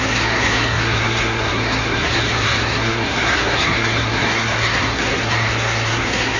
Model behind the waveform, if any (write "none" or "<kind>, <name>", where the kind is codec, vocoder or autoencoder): codec, SNAC